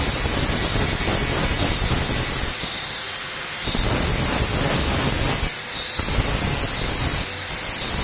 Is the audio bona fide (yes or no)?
yes